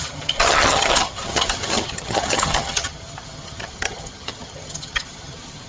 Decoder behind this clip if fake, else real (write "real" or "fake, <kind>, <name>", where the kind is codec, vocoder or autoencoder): fake, vocoder, HiFi-GAN